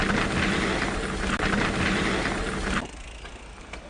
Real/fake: real